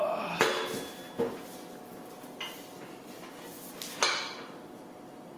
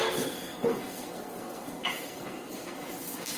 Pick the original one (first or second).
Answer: first